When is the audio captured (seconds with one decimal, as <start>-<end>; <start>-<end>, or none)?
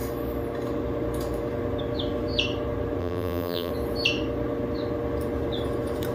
0.0-3.0; 3.7-6.1